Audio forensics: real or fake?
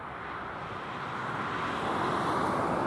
real